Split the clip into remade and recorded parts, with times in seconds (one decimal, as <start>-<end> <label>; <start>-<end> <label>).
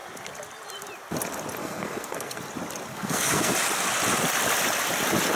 0.0-1.6 recorded; 1.6-2.4 remade; 2.4-2.9 recorded; 2.9-3.5 remade; 3.5-5.4 recorded